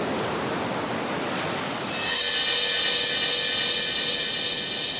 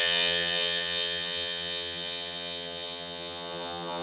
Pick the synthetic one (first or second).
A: second